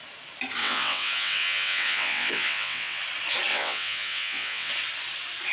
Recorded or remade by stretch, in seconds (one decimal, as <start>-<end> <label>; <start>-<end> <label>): 0.0-0.6 recorded; 0.6-3.0 remade; 3.0-3.5 recorded; 3.5-4.7 remade; 4.7-5.5 recorded